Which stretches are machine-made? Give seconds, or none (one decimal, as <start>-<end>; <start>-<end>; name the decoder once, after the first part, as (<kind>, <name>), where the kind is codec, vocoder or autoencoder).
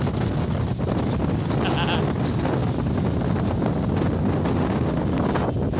none